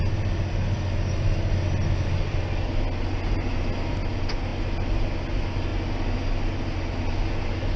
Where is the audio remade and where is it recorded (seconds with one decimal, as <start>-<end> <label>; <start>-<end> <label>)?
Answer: 0.0-7.8 recorded